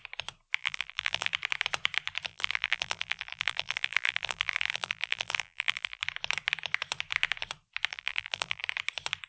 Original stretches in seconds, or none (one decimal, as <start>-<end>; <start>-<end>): 0.0-0.6; 1.3-2.3; 6.0-7.9; 8.6-9.3